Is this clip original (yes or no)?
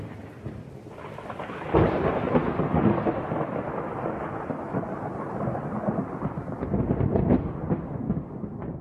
yes